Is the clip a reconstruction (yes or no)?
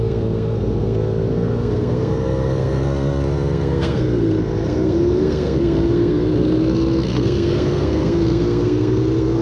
yes